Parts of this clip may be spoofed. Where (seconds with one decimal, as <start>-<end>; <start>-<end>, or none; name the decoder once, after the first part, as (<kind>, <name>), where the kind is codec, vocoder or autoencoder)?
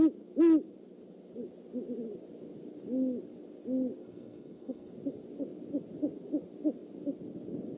4.0-4.9 (codec, SNAC)